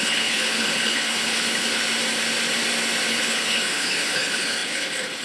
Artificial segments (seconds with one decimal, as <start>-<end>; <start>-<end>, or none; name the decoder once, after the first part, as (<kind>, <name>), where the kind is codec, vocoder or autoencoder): 0.0-1.8 (codec, HILCodec); 3.1-5.2